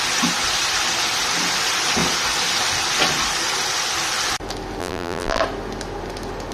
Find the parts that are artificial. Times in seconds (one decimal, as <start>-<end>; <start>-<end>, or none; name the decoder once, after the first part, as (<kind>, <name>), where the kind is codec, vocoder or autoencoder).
4.8-5.4 (vocoder, BigVGAN v2)